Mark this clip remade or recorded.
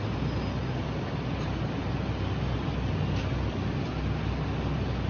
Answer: recorded